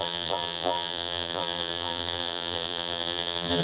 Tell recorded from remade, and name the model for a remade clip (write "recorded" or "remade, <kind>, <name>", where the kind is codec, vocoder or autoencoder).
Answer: remade, vocoder, BigVGAN v2